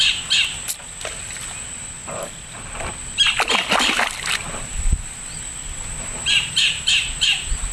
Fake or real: real